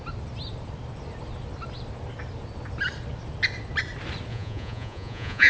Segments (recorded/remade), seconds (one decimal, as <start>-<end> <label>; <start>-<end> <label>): 0.0-4.3 recorded; 4.3-5.5 remade